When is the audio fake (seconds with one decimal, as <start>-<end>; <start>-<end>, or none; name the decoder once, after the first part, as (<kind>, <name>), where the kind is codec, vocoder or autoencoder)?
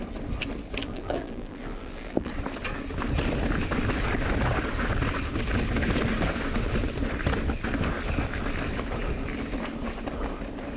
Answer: 0.8-2.3 (vocoder, BigVGAN v2)